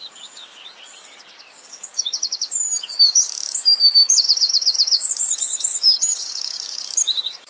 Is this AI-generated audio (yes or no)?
yes